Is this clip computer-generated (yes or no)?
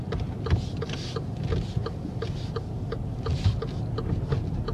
no